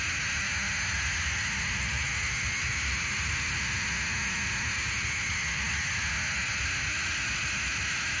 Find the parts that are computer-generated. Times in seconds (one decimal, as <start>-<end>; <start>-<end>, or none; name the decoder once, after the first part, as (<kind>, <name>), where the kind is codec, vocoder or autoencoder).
none